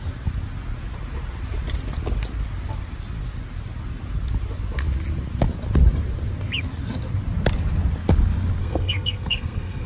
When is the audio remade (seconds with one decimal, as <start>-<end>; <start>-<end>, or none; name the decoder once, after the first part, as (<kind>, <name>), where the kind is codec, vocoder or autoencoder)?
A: 8.6-9.9 (codec, SNAC)